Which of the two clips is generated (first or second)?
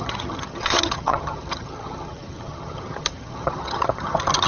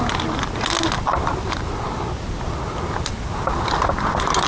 first